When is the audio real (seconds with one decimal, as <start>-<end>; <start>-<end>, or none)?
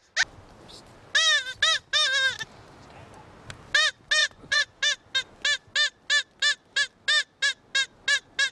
0.0-4.2; 4.8-8.5